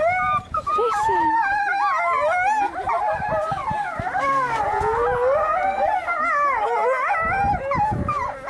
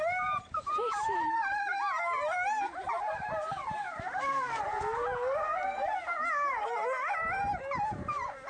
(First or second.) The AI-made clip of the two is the second